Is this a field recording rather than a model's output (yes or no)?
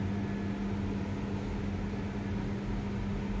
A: yes